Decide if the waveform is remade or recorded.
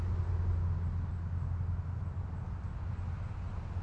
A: recorded